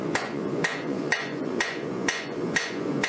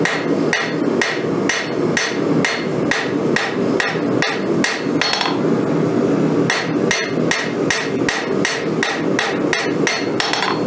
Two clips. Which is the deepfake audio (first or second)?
first